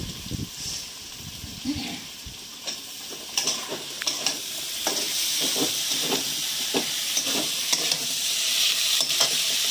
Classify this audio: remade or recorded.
remade